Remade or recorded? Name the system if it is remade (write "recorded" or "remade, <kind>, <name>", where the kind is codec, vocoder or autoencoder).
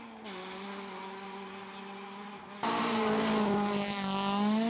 recorded